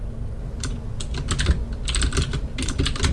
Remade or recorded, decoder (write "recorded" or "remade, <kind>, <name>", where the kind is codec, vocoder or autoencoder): recorded